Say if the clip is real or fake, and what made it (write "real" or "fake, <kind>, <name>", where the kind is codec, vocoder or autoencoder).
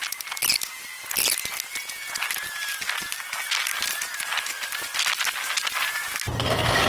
real